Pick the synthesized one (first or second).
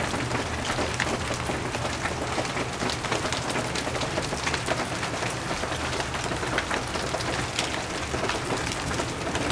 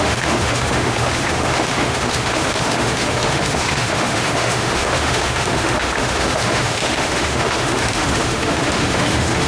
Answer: second